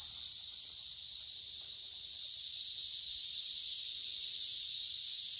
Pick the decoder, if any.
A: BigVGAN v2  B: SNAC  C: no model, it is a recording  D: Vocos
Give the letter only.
C